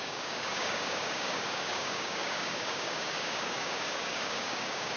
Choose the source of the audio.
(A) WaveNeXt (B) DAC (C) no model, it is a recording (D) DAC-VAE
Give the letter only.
B